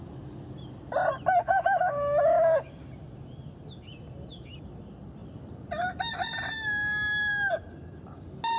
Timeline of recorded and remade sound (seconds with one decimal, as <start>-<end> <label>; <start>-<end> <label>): 0.0-1.4 recorded; 1.4-2.9 remade; 2.9-8.6 recorded